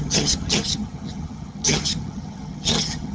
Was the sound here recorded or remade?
remade